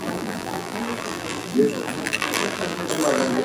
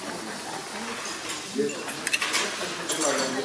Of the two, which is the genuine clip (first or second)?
second